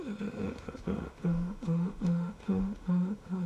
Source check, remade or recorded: remade